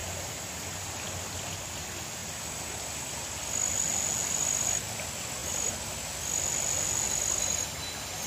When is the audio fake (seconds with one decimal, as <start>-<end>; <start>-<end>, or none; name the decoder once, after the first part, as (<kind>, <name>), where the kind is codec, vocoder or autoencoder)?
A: none